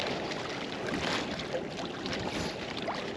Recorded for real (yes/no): yes